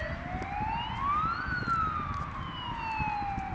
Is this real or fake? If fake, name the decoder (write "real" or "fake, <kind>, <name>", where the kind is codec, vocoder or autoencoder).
real